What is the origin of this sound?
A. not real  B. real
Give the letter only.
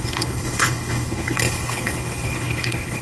A